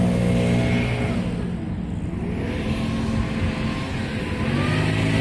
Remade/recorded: recorded